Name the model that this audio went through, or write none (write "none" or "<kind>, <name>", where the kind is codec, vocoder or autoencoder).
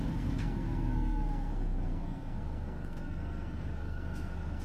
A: codec, SNAC